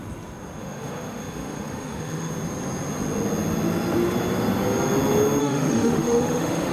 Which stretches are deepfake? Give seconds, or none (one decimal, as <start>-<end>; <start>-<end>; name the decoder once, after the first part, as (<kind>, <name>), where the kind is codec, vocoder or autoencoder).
0.6-2.3 (autoencoder, DAC-VAE); 5.4-6.7